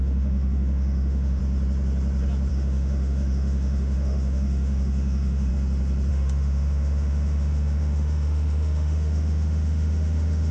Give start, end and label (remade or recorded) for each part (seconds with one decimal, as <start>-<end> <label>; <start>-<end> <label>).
0.0-1.4 remade; 1.4-2.5 recorded; 2.5-5.5 remade; 5.5-6.1 recorded; 6.1-10.5 remade